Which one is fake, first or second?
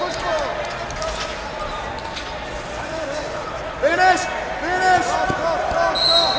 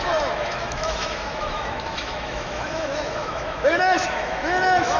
second